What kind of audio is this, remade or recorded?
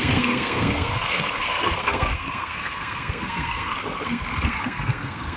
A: remade